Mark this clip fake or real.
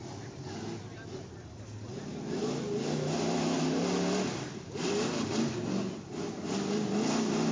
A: real